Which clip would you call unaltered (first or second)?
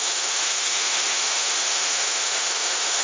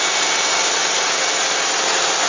second